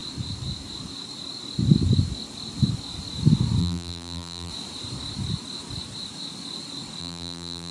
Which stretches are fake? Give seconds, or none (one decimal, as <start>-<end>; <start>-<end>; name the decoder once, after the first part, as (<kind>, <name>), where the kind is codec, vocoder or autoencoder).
3.6-4.5 (vocoder, BigVGAN v2); 7.0-7.7